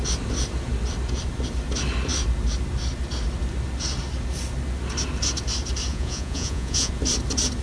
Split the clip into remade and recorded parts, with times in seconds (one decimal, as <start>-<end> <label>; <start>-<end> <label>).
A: 0.0-5.9 recorded; 5.9-6.9 remade; 6.9-7.6 recorded